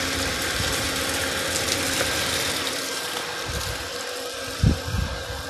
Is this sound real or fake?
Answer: fake